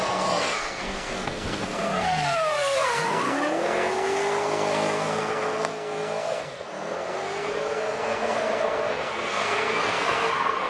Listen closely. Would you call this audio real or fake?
fake